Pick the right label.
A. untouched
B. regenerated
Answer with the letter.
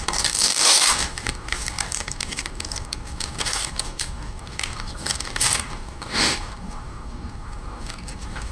B